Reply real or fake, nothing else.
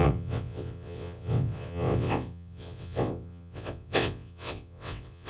fake